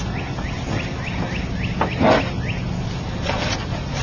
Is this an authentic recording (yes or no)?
yes